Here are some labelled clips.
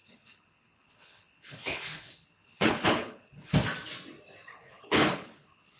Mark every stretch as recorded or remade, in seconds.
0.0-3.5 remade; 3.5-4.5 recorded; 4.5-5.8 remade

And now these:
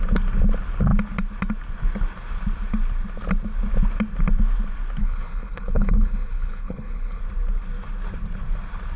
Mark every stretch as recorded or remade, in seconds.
0.0-5.0 recorded; 5.0-7.2 remade; 7.2-9.0 recorded

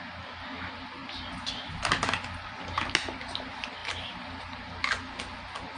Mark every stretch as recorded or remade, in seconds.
0.0-5.8 recorded

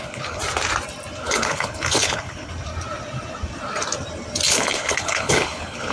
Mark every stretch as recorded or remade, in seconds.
0.0-0.4 remade; 0.4-1.2 recorded; 1.2-2.5 remade; 2.5-4.5 recorded; 4.5-5.9 remade

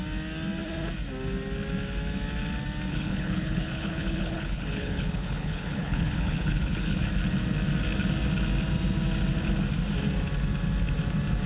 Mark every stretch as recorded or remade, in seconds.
0.0-2.9 recorded; 2.9-7.1 remade; 7.1-11.5 recorded